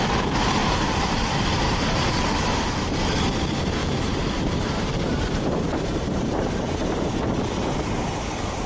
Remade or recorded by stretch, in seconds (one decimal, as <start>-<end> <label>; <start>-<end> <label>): 0.0-0.6 recorded; 0.6-1.3 remade; 1.3-3.8 recorded; 3.8-7.2 remade; 7.2-8.7 recorded